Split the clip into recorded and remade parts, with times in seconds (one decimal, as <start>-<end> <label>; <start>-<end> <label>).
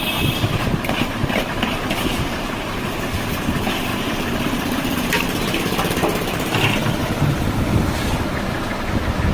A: 0.0-1.2 recorded; 1.2-2.9 remade; 2.9-3.9 recorded; 3.9-7.5 remade; 7.5-9.3 recorded